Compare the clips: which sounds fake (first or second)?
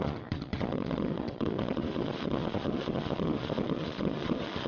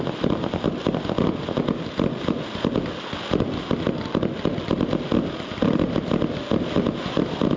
first